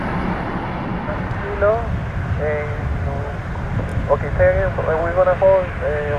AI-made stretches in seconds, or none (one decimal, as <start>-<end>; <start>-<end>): none